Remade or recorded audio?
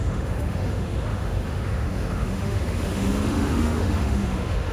remade